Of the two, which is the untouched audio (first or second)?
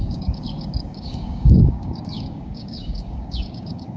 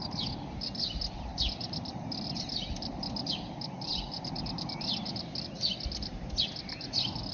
second